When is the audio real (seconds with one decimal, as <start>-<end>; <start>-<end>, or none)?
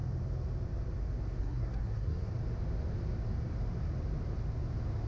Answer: 0.0-1.4; 2.3-5.1